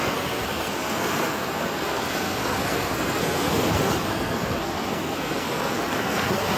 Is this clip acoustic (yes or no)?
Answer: no